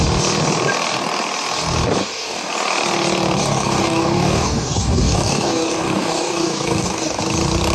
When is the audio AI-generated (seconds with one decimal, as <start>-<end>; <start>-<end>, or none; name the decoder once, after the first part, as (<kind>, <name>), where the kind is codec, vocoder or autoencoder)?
2.0-2.5 (codec, DAC); 3.4-7.2